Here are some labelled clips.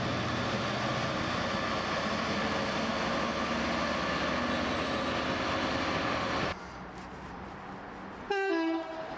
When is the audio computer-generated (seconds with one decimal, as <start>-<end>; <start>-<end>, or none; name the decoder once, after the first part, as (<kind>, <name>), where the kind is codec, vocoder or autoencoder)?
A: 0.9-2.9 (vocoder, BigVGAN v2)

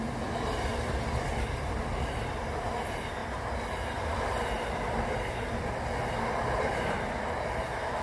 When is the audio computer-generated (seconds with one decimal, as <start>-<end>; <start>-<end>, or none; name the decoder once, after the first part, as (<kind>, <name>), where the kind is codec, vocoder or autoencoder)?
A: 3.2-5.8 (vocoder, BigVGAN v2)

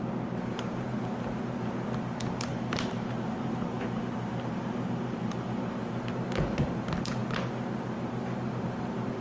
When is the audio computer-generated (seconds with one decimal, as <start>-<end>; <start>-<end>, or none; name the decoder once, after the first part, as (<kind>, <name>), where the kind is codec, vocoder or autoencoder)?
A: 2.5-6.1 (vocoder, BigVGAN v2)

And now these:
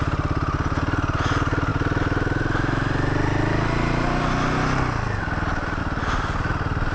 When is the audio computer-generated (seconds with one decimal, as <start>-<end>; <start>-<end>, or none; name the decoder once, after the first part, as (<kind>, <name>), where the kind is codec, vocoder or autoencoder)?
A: none

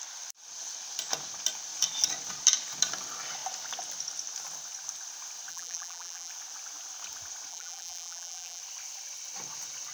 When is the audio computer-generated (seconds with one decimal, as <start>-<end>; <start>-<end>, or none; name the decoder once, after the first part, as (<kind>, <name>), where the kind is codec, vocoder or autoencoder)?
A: 5.5-6.3 (vocoder, BigVGAN v2); 7.5-8.6